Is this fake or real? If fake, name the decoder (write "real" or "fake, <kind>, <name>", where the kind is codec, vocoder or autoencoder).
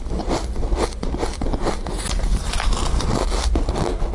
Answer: real